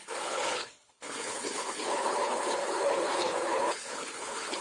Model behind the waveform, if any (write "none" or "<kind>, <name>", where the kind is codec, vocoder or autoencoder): codec, HILCodec